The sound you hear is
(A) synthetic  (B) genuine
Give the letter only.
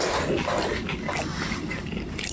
B